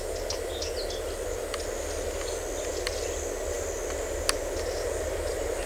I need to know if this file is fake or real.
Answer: real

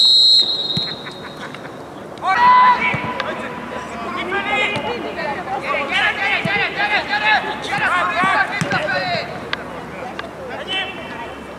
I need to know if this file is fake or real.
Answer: real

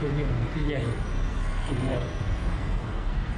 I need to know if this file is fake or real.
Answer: fake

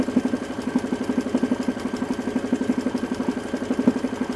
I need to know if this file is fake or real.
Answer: real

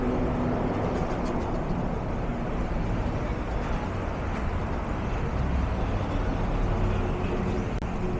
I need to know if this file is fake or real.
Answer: real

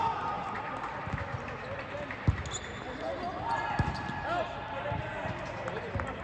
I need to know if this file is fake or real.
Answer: real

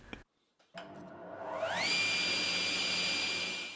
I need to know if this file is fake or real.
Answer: real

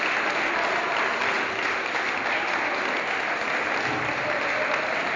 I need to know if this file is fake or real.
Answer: real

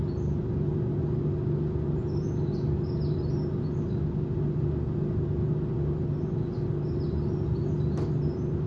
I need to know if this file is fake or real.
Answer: real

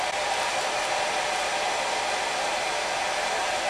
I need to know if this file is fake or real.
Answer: real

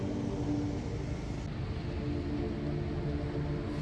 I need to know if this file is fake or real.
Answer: real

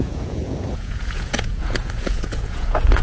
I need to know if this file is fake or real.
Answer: fake